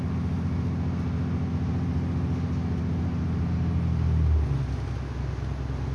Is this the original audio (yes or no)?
yes